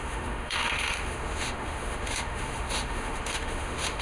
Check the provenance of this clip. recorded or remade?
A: remade